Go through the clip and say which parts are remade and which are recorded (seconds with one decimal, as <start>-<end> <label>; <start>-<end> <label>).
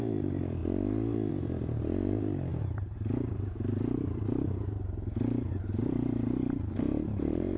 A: 0.0-0.6 remade; 0.6-1.3 recorded; 1.3-7.6 remade